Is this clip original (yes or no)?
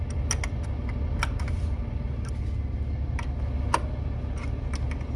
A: yes